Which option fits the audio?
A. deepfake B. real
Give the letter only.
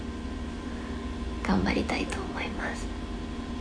B